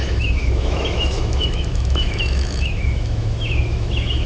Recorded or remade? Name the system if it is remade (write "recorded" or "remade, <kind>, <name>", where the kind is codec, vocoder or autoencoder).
remade, autoencoder, DAC-VAE